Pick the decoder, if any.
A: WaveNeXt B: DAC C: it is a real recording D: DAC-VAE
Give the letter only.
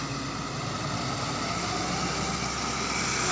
C